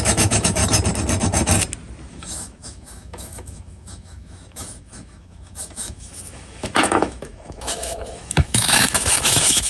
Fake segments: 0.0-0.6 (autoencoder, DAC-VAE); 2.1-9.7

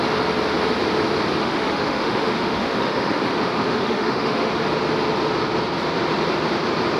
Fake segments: 1.4-3.2 (autoencoder, DAC-VAE); 3.6-4.5